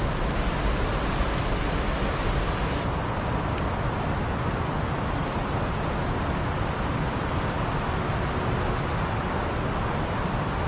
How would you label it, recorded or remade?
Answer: recorded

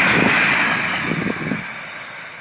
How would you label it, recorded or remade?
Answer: recorded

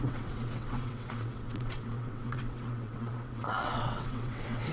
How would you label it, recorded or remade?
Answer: remade